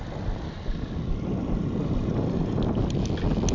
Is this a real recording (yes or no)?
yes